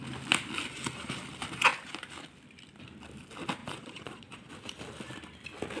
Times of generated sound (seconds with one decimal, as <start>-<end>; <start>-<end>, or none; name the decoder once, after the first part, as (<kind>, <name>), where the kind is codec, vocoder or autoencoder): 3.6-4.5 (vocoder, Vocos)